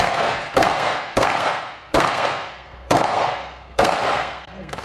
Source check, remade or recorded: remade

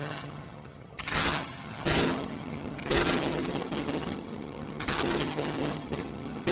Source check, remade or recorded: remade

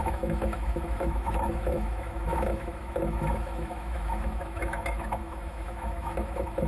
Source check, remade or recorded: remade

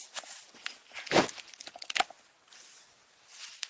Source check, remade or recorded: recorded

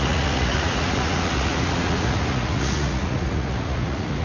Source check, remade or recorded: remade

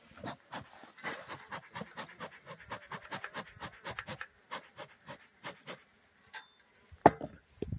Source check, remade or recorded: recorded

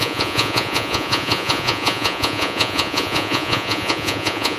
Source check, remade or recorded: remade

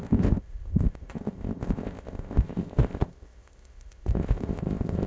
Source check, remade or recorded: remade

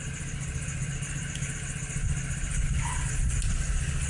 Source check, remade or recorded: recorded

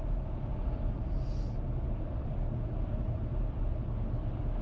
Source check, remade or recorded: recorded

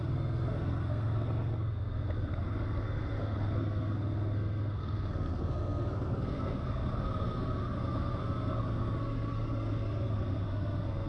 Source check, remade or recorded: remade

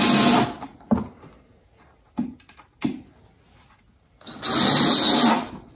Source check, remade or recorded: recorded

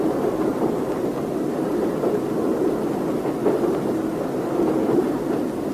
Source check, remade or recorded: recorded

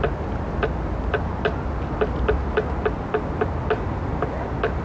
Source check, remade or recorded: recorded